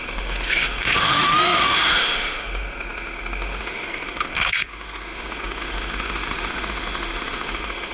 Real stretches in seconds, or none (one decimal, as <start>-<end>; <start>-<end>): none